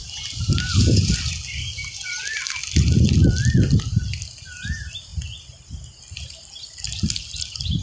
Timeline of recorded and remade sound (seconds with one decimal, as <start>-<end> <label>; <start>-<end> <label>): 0.0-7.8 recorded